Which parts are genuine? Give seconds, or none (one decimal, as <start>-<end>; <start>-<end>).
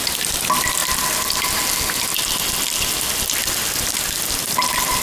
0.0-5.0